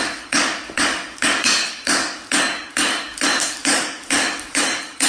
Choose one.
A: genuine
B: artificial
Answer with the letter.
B